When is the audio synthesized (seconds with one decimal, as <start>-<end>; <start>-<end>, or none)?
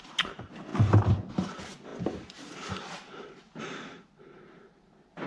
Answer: none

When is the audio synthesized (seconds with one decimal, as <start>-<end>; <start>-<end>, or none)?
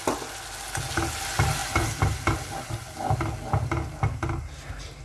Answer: none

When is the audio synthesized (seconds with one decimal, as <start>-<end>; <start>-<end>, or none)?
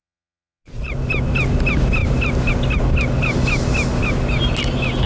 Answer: 0.0-0.9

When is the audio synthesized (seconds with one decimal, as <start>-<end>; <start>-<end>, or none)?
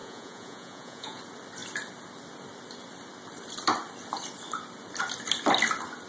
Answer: 0.0-1.2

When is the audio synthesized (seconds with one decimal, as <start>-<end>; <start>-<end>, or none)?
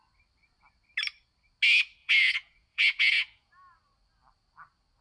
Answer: 2.0-3.5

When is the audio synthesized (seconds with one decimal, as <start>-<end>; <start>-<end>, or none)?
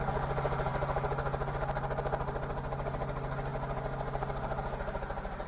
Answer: none